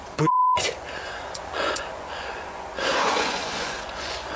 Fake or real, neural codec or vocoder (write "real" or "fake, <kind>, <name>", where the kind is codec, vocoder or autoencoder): fake, vocoder, Vocos